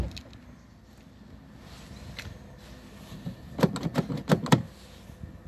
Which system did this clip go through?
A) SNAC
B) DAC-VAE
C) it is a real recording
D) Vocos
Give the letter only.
C